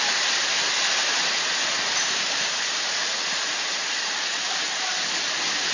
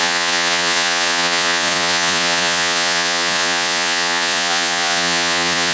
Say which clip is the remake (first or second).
second